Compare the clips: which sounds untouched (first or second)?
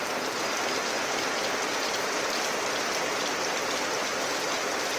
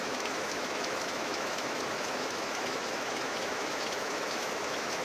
first